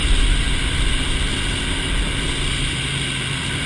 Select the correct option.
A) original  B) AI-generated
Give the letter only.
A